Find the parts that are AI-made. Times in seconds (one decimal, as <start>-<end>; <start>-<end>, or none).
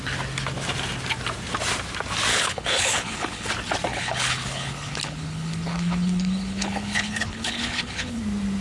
2.3-3.5; 3.9-8.2